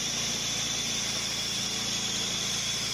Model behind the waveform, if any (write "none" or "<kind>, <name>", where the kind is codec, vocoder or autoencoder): none